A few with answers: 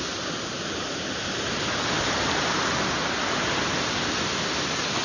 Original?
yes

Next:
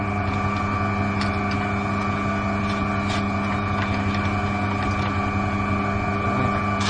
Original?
yes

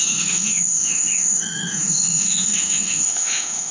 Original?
no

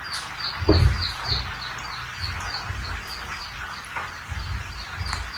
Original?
yes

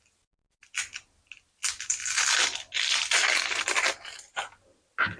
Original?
yes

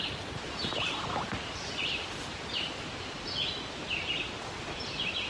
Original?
yes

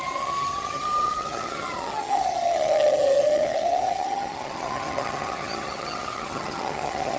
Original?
no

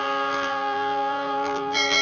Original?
no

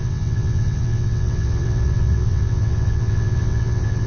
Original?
no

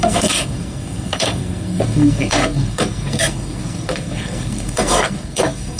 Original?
no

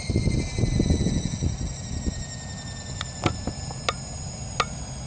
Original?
yes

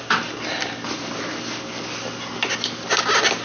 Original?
yes